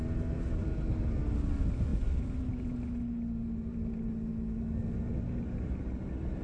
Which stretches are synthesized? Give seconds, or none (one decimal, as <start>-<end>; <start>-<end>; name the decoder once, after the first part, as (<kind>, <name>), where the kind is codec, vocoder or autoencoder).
none